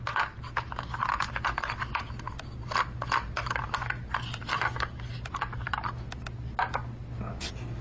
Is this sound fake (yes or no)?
no